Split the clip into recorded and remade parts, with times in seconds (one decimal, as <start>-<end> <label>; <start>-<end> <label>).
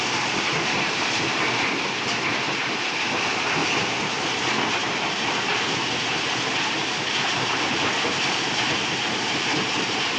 0.0-3.6 remade; 3.6-4.7 recorded; 4.7-10.2 remade